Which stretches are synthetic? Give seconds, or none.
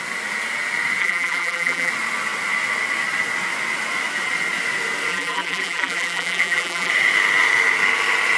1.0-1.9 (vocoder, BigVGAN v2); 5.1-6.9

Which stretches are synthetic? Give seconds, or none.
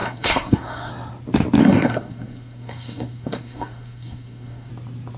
0.0-0.9 (codec, SNAC); 1.6-4.7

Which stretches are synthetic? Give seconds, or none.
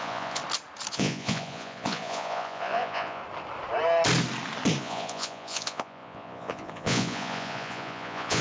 0.0-0.4 (vocoder, Vocos); 0.9-3.2; 4.8-8.4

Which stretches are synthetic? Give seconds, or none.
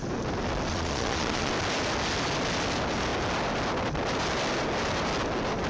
0.7-1.5 (vocoder, Vocos)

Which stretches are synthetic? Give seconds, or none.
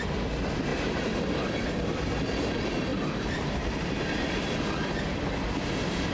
0.7-1.9 (vocoder, BigVGAN v2); 2.9-4.2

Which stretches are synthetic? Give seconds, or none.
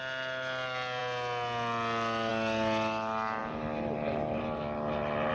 none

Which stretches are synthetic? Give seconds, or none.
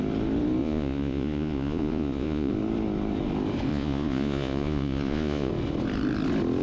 0.6-2.5 (vocoder, Vocos); 3.7-5.5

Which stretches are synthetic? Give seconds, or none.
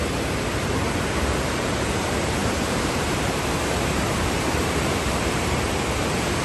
0.0-6.4 (vocoder, BigVGAN v2)